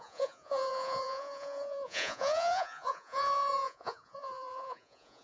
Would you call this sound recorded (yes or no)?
no